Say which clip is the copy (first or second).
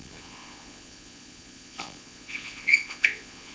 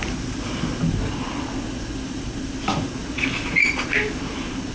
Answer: first